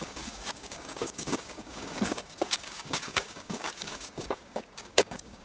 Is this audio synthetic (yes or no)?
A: yes